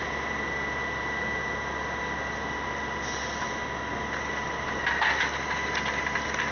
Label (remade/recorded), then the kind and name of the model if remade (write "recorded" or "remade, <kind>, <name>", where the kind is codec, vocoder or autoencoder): recorded